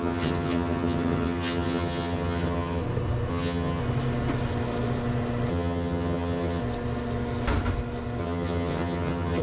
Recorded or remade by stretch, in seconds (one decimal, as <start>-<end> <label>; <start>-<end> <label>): 0.0-2.8 remade; 2.8-3.3 recorded; 3.3-3.8 remade; 3.8-5.5 recorded; 5.5-6.6 remade; 6.6-8.2 recorded; 8.2-9.4 remade